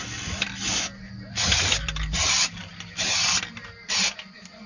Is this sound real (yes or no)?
no